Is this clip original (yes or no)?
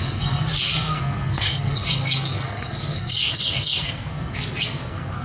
no